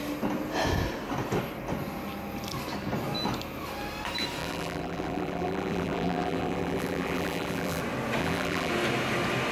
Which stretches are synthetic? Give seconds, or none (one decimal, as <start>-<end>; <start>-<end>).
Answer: 4.4-7.8; 8.2-8.7